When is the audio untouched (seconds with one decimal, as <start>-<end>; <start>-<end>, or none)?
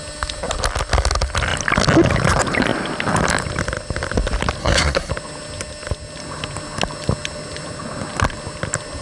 0.0-4.6; 5.1-9.0